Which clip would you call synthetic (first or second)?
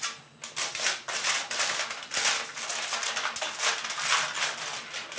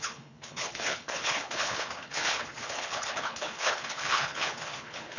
second